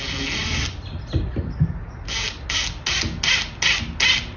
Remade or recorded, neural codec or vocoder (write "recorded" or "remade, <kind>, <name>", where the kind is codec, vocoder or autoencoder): recorded